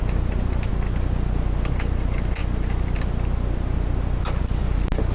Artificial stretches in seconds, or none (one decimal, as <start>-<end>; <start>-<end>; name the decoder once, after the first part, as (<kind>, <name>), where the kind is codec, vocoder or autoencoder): none